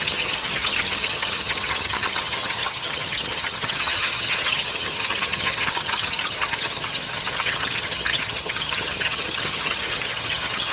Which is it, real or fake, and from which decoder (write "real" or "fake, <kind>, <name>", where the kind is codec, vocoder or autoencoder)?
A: fake, vocoder, HiFi-GAN